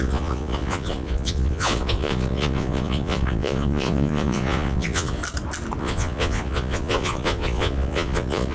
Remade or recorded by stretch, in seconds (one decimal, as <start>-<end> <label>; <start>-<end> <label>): 0.0-5.2 remade; 5.2-5.8 recorded; 5.8-8.5 remade